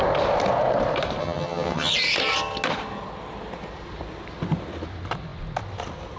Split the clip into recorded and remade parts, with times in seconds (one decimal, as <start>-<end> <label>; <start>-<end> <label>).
0.0-1.2 recorded; 1.2-1.9 remade; 1.9-6.2 recorded